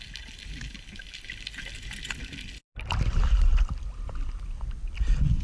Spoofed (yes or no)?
no